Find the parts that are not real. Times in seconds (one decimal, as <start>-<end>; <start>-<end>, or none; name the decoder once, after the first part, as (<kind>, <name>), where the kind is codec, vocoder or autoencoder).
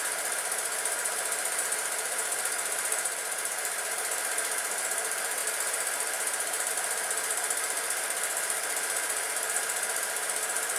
0.0-10.8 (vocoder, BigVGAN v2)